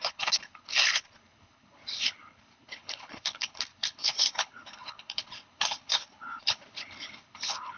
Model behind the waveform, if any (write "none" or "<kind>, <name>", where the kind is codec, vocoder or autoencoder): codec, HILCodec